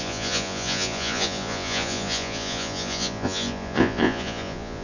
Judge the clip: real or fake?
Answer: fake